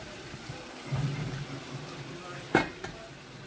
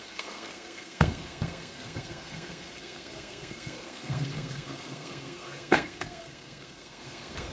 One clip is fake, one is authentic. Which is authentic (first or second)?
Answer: first